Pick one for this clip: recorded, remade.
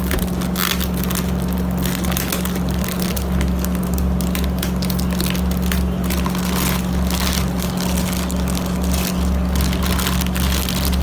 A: recorded